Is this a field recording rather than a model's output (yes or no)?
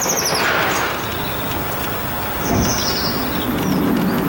yes